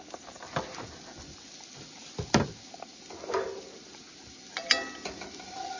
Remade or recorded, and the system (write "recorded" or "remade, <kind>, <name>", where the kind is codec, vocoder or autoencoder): recorded